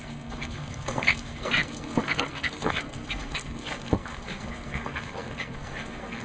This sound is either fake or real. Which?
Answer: fake